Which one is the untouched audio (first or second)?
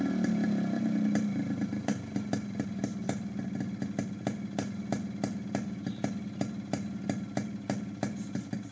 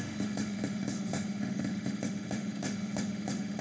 first